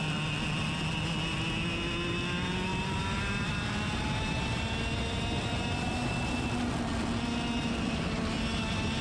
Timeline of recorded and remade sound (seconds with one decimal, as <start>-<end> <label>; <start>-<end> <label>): 0.0-9.0 recorded